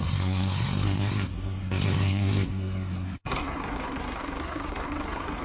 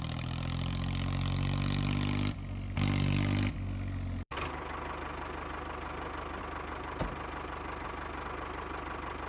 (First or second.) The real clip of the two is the second